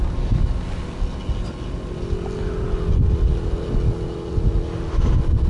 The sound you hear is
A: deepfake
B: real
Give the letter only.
B